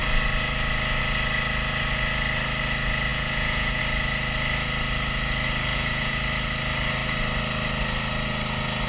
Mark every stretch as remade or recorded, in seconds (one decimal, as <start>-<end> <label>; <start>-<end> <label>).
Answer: 0.0-3.1 recorded; 3.1-3.8 remade; 3.8-5.7 recorded; 5.7-6.2 remade; 6.2-8.9 recorded